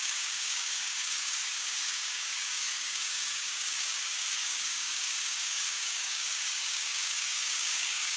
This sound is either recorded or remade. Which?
remade